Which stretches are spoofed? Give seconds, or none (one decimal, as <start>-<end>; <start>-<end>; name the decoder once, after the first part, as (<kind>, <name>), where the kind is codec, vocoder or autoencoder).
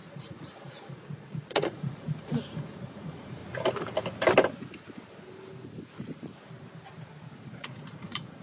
0.0-3.4 (vocoder, Vocos); 7.4-8.4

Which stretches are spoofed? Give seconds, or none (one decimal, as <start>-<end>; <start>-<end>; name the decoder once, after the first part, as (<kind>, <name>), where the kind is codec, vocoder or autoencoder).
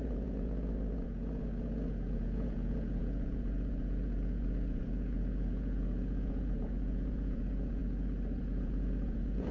0.0-7.8 (vocoder, Vocos); 8.4-9.5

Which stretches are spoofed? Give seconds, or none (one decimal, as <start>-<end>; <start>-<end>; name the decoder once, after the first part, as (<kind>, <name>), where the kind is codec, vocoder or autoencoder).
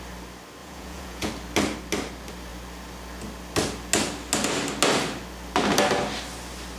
0.6-1.3 (vocoder, Vocos)